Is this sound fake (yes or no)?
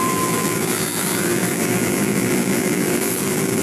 yes